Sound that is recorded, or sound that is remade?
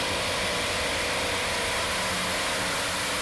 recorded